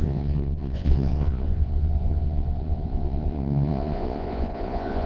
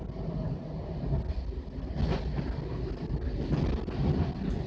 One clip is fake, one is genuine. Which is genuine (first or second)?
second